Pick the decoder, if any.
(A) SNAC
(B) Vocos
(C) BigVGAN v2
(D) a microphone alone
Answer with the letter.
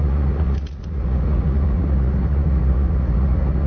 B